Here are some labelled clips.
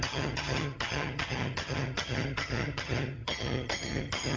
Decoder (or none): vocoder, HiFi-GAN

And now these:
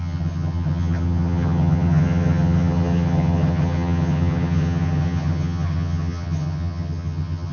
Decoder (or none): vocoder, HiFi-GAN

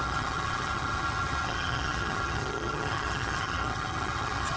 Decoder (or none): vocoder, HiFi-GAN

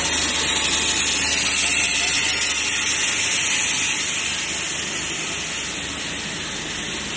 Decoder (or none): none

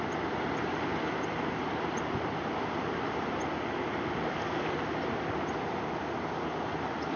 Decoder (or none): none